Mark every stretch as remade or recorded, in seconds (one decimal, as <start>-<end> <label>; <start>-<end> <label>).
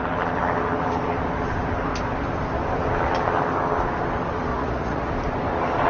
0.0-4.5 recorded; 4.5-5.1 remade; 5.1-5.9 recorded